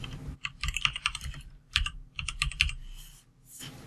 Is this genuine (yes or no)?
yes